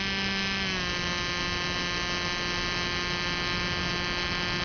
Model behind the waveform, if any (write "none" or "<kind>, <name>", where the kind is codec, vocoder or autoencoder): none